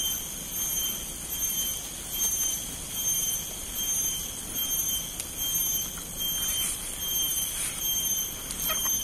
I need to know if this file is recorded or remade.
recorded